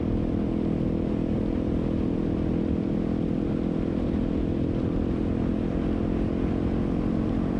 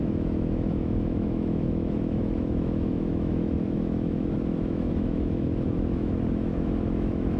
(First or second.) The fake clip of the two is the second